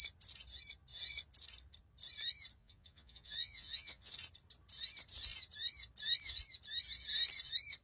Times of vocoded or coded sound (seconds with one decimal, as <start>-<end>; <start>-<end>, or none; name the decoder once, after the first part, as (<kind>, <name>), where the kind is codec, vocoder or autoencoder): 2.6-4.1 (vocoder, Vocos)